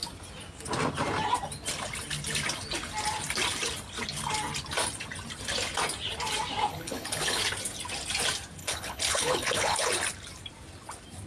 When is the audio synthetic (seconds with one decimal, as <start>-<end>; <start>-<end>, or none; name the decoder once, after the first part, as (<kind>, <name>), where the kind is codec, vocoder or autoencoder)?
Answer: 6.7-7.4 (codec, HILCodec); 8.6-9.9